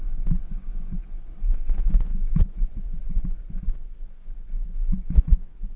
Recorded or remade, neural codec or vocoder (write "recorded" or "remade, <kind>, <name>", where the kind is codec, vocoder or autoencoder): remade, vocoder, Vocos